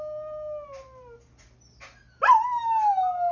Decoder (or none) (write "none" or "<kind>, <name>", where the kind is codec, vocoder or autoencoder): none